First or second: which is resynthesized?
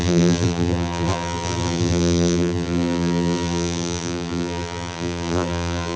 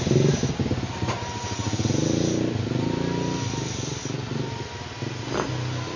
first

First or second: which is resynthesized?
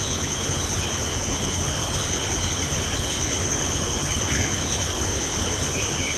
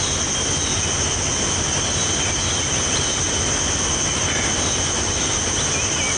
first